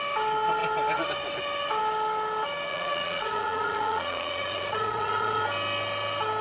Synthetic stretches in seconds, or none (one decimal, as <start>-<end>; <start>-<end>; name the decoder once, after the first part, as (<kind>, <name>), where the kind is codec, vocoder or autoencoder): 2.7-5.4 (vocoder, Vocos)